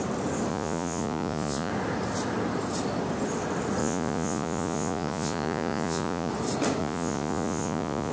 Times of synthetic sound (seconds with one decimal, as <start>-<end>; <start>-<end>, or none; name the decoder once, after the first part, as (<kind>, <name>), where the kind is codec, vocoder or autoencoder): 0.5-1.7 (vocoder, Vocos); 3.8-6.3; 6.8-8.1